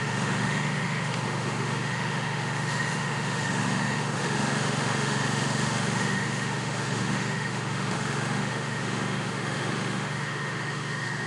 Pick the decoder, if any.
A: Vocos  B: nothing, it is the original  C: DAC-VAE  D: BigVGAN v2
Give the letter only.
C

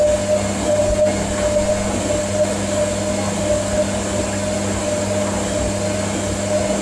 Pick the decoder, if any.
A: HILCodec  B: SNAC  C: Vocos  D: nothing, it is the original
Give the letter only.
D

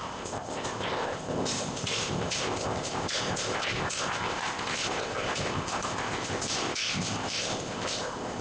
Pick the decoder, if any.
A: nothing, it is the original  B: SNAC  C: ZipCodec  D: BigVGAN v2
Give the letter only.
C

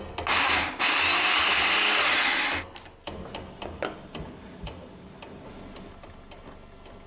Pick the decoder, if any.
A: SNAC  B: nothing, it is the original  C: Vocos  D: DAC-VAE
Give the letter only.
B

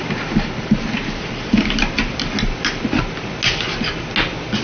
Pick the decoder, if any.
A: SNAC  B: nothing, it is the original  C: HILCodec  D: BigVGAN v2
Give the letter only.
B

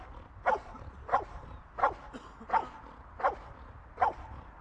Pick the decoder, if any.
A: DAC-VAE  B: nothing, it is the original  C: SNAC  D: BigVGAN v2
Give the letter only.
B